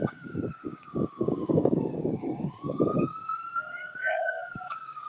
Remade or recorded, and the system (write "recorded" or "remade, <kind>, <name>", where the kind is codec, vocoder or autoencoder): remade, codec, DAC